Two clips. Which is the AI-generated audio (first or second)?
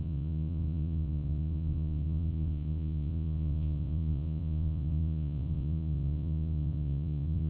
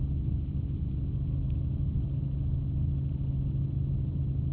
first